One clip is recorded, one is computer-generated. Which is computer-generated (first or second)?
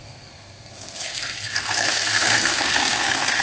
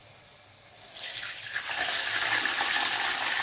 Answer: first